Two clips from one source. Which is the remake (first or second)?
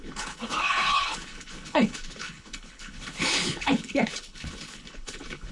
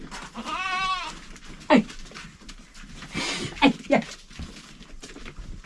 first